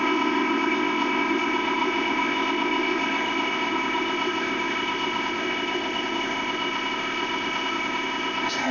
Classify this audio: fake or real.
fake